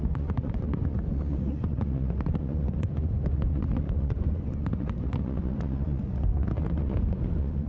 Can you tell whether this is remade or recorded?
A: remade